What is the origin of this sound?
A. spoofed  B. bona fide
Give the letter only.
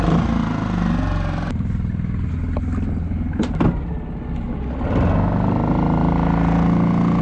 B